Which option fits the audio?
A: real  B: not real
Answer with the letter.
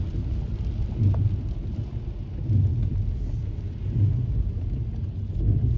A